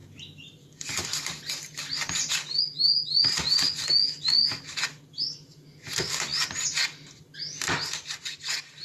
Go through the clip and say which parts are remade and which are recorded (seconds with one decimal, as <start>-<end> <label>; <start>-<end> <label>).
0.0-2.6 remade; 2.6-8.8 recorded